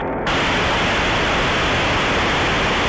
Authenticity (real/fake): real